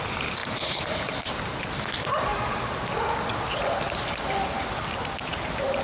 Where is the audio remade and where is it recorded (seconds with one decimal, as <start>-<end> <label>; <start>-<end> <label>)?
0.0-0.4 recorded; 0.4-1.4 remade; 1.4-5.8 recorded